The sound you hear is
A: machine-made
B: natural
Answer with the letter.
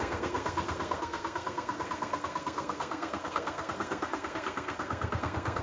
A